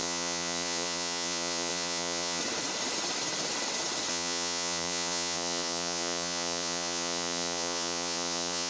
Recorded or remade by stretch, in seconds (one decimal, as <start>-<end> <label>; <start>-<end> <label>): 0.0-2.4 remade; 2.4-4.1 recorded; 4.1-8.7 remade